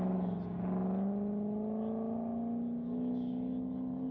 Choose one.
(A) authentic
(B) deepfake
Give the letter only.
A